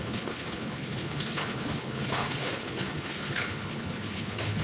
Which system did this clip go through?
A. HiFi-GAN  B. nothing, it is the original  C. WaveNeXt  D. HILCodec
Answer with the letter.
D